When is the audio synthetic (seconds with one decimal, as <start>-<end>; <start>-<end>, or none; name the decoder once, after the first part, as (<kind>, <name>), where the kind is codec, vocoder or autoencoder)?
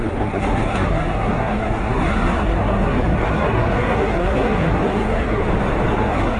0.0-5.4 (codec, SNAC); 5.9-6.4